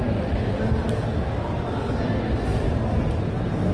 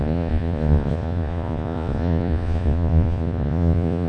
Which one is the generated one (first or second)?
second